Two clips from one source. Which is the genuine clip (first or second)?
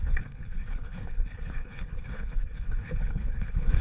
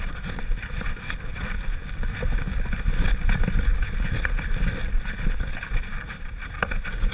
second